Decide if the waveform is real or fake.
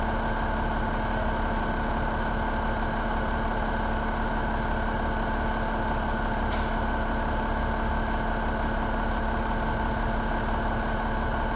real